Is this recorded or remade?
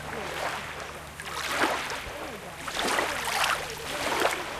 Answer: recorded